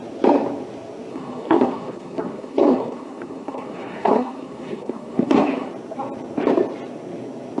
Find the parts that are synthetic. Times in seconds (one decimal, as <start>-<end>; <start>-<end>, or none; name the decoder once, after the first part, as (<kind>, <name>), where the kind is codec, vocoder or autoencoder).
1.1-5.7 (codec, SNAC)